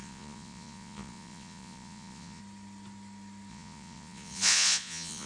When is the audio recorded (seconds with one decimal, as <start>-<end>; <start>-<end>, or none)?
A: 2.4-3.5